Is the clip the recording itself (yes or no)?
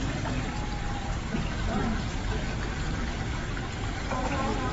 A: yes